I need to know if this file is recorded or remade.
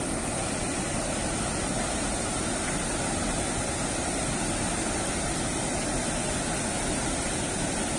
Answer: recorded